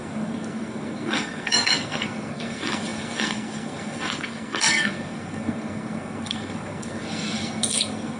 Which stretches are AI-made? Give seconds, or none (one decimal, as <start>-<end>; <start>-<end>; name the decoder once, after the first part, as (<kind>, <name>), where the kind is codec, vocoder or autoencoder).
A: 0.0-8.2 (codec, SNAC)